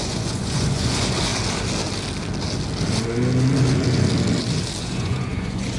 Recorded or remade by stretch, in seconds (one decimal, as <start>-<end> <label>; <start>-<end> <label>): 0.0-1.3 remade; 1.3-4.8 recorded; 4.8-5.8 remade